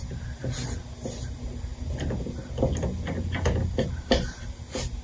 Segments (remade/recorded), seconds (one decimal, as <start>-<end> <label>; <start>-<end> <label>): 0.0-0.4 remade; 0.4-1.1 recorded; 1.1-1.7 remade; 1.7-3.9 recorded; 3.9-5.0 remade